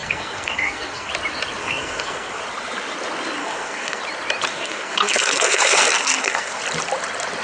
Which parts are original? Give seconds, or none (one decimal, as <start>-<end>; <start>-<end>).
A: 1.1-1.6; 2.4-3.4; 4.0-4.5; 6.6-7.4